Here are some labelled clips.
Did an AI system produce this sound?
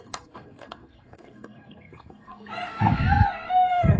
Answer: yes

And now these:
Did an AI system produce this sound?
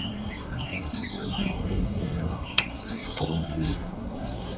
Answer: yes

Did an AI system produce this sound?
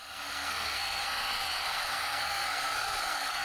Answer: yes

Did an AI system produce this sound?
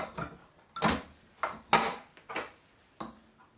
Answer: no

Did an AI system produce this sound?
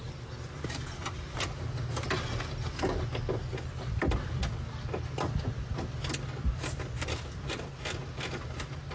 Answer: no